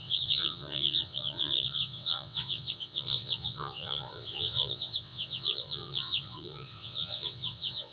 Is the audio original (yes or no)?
no